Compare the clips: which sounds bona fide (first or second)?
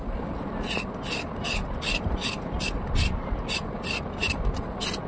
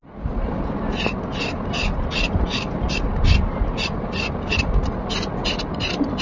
second